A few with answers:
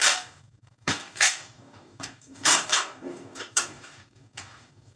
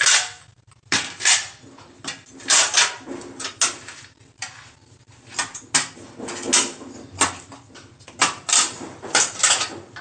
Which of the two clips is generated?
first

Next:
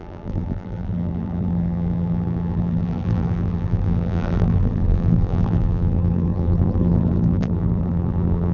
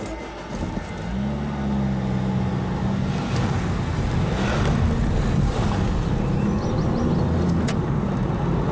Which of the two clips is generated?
first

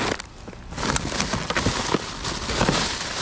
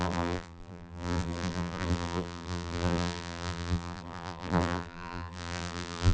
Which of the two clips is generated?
second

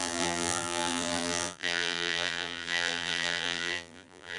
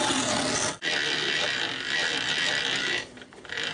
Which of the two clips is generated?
first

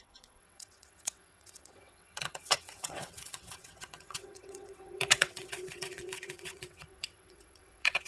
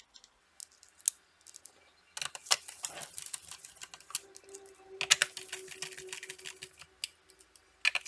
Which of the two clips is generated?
first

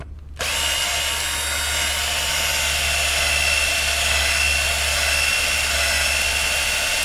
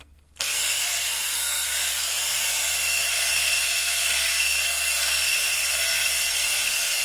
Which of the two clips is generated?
second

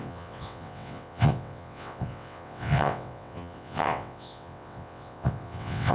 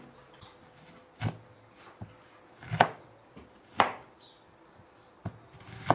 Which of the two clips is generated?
first